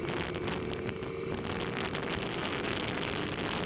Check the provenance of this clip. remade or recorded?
recorded